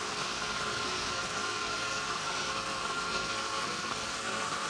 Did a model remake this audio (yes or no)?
yes